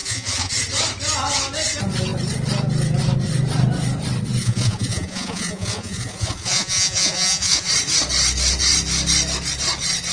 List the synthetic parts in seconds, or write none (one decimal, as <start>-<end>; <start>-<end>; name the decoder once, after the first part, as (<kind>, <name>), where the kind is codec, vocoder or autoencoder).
0.0-0.5 (vocoder, Vocos); 4.4-7.7